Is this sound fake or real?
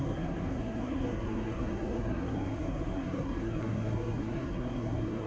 fake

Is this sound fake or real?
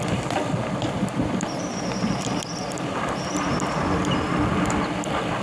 fake